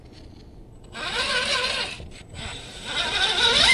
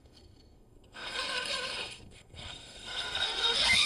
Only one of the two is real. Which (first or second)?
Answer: first